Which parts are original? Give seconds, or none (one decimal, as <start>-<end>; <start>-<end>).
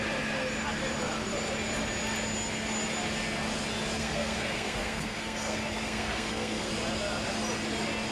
0.0-4.0; 6.7-8.1